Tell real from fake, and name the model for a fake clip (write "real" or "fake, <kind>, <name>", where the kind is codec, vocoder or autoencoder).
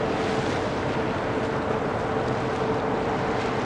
real